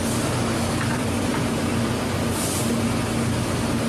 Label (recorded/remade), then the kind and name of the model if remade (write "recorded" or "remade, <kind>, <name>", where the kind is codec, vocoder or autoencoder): recorded